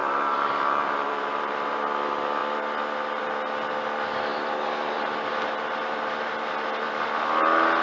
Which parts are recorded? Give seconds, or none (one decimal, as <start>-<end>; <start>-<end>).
1.8-7.8